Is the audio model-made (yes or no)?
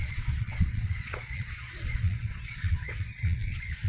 yes